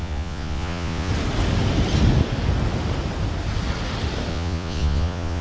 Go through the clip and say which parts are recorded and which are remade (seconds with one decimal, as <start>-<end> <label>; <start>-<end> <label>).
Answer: 0.0-1.1 remade; 1.1-4.3 recorded; 4.3-5.4 remade